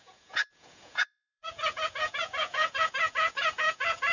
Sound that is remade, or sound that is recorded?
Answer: remade